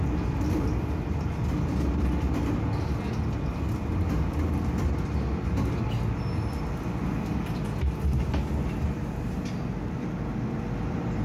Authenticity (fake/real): real